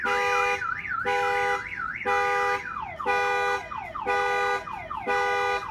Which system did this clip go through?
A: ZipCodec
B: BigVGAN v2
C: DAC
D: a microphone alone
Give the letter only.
D